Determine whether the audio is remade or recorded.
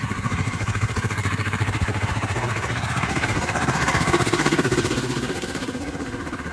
remade